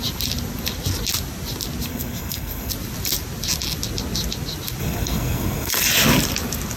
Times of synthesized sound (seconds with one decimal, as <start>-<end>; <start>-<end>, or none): 1.9-2.7; 4.8-5.7